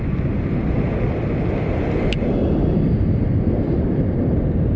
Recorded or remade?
recorded